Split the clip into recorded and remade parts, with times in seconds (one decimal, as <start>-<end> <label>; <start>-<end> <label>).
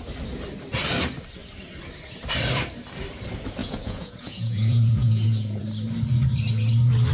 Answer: 0.0-3.6 recorded; 3.6-5.6 remade; 5.6-7.1 recorded